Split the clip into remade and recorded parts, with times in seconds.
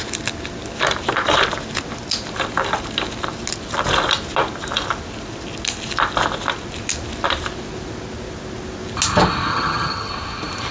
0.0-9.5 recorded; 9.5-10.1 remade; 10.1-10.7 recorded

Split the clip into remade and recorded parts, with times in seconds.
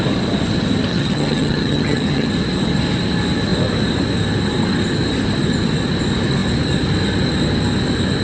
0.0-0.9 recorded; 0.9-2.3 remade; 2.3-8.2 recorded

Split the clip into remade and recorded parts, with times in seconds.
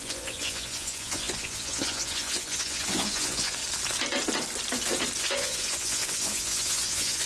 0.0-3.6 remade; 3.6-5.2 recorded; 5.2-7.3 remade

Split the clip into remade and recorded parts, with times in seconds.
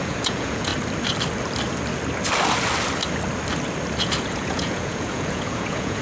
0.0-0.7 remade; 0.7-4.0 recorded; 4.0-6.0 remade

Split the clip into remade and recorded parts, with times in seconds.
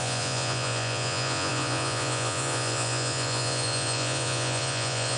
0.0-5.2 remade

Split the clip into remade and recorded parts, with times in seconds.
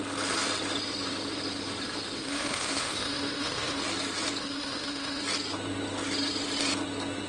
0.0-2.2 recorded; 2.2-3.8 remade; 3.8-4.4 recorded; 4.4-5.2 remade; 5.2-7.3 recorded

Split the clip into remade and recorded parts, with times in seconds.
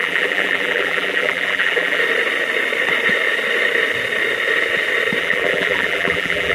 0.0-2.0 remade; 2.0-5.2 recorded; 5.2-6.5 remade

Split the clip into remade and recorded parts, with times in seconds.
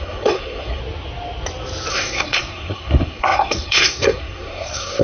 0.0-0.8 remade; 0.8-1.9 recorded; 1.9-5.0 remade